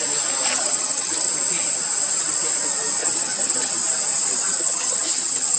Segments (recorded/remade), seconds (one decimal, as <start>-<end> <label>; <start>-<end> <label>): 0.0-0.5 recorded; 0.5-1.3 remade; 1.3-3.0 recorded; 3.0-3.7 remade; 3.7-4.5 recorded; 4.5-5.6 remade